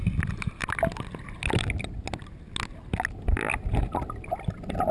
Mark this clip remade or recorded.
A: recorded